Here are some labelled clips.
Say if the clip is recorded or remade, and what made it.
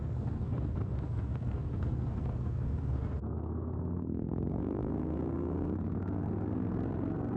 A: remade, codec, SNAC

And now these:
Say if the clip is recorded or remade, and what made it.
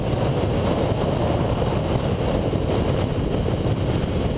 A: recorded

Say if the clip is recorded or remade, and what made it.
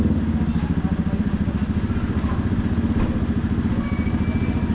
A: recorded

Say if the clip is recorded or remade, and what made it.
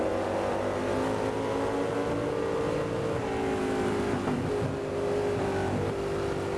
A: recorded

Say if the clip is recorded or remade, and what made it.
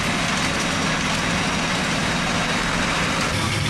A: recorded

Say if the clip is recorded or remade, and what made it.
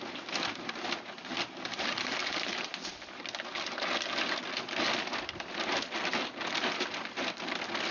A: recorded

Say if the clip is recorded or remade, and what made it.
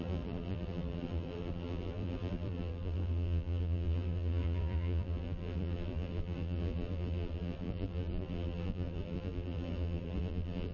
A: remade, vocoder, BigVGAN v2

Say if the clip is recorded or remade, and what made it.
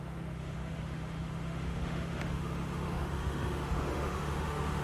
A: remade, autoencoder, DAC-VAE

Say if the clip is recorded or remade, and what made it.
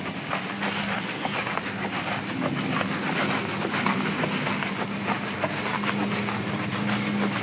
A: recorded